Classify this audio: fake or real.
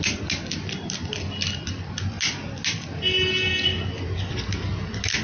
real